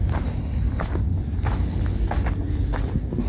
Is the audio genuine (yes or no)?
yes